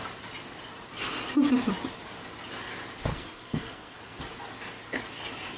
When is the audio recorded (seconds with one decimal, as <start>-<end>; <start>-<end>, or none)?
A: 0.0-3.1; 4.2-5.6